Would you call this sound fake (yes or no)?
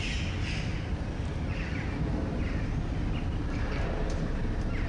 no